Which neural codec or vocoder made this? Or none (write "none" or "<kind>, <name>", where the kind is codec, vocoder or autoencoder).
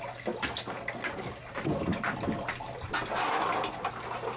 none